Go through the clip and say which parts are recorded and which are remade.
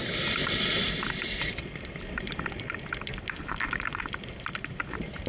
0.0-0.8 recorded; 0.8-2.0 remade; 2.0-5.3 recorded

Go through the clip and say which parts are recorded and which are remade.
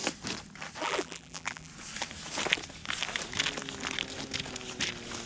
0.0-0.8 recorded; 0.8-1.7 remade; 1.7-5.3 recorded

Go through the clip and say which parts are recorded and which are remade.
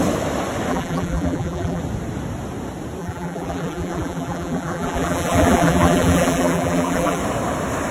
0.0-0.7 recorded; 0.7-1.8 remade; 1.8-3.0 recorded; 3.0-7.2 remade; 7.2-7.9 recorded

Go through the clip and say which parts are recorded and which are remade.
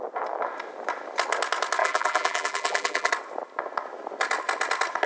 0.0-1.8 recorded; 1.8-3.1 remade; 3.1-5.1 recorded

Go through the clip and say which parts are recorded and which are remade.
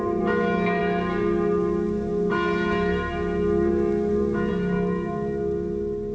0.0-6.1 recorded